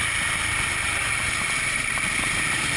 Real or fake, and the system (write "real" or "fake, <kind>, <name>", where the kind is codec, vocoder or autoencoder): real